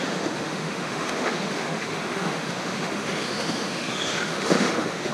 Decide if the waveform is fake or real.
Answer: fake